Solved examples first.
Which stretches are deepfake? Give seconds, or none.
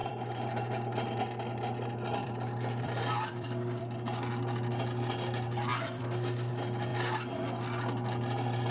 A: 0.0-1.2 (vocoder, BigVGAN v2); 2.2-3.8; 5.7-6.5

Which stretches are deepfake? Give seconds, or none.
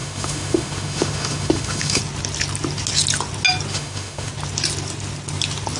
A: 0.0-2.0 (autoencoder, DAC-VAE); 3.7-4.3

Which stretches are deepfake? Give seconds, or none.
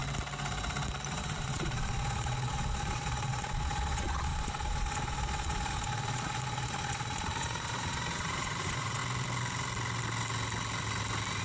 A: 1.1-9.0 (vocoder, Vocos)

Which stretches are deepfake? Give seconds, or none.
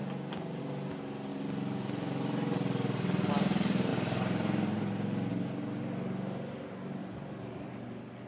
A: 7.0-7.7 (vocoder, BigVGAN v2)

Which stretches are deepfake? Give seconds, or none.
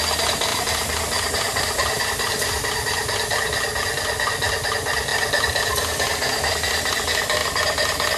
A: 0.5-2.0 (vocoder, BigVGAN v2)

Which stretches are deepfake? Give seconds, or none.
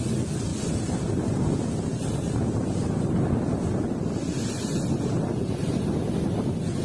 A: none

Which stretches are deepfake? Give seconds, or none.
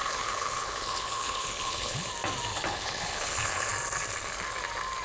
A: 0.0-2.1 (codec, HILCodec); 2.5-3.7